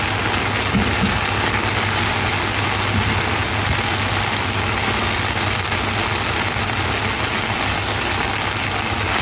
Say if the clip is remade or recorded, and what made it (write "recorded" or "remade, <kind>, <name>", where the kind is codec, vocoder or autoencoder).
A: recorded